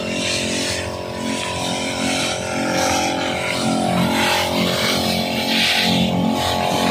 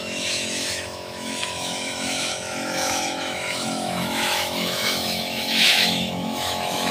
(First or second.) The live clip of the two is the first